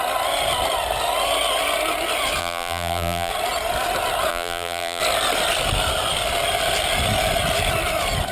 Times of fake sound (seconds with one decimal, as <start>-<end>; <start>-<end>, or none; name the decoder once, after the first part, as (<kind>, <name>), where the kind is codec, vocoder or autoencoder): 2.4-3.3 (vocoder, BigVGAN v2); 4.3-5.0